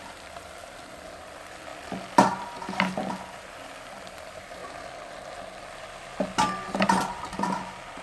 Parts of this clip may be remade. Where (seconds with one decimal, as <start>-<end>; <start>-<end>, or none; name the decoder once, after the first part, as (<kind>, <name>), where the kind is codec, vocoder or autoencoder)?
0.0-4.6 (vocoder, BigVGAN v2); 6.8-8.0